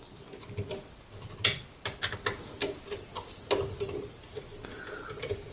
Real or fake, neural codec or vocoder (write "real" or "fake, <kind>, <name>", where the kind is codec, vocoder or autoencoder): real